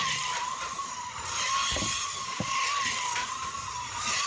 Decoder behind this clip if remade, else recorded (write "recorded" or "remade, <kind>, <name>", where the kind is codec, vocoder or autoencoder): remade, vocoder, BigVGAN v2